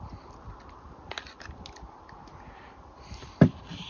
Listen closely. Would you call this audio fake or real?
real